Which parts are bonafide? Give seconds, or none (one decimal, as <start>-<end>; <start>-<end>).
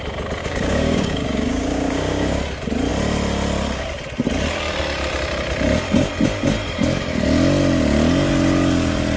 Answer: 0.0-0.4; 2.4-9.2